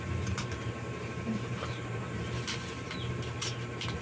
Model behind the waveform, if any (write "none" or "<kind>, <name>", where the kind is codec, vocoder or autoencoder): vocoder, BigVGAN v2